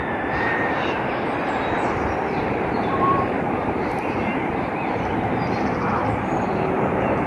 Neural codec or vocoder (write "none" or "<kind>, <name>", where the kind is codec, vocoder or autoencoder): vocoder, BigVGAN v2